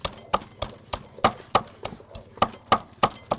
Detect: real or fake real